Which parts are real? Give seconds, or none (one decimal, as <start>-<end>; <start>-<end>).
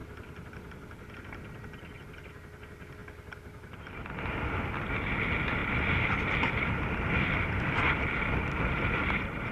0.0-3.0; 4.5-5.6